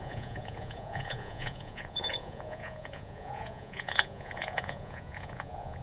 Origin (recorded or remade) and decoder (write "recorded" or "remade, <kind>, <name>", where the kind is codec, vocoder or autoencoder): remade, vocoder, Vocos